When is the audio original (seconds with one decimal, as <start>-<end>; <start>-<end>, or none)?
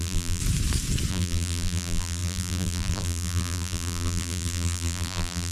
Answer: 0.4-1.1